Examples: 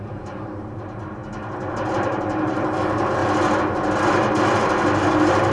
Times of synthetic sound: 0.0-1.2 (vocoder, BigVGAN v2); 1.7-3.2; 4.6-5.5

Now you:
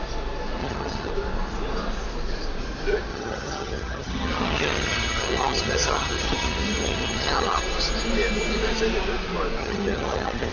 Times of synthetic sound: 0.6-1.1 (vocoder, HiFi-GAN); 3.1-7.6; 9.6-10.5

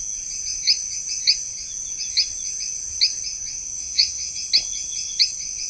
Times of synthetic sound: 3.8-4.3 (vocoder, Vocos)

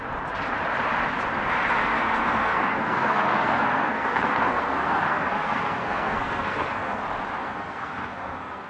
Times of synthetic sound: 1.8-7.0 (codec, SNAC); 7.4-8.7